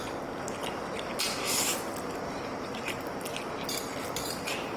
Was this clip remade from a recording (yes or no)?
no